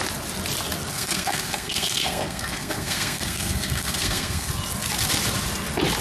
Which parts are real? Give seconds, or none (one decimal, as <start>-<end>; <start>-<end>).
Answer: 0.0-0.9; 4.5-6.0